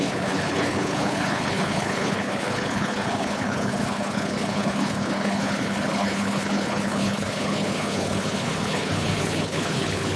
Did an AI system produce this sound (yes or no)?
yes